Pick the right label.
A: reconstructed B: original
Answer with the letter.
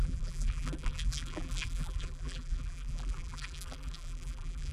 A